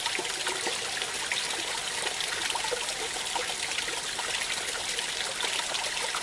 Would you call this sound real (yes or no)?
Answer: yes